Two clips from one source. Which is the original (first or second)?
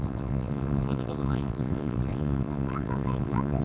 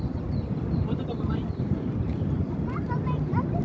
second